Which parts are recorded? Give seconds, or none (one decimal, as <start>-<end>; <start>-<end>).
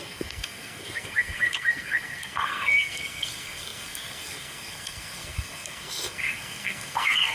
none